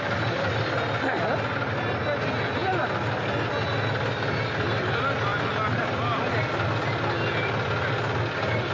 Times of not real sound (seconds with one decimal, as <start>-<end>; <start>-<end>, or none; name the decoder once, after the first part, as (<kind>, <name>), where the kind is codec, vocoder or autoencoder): none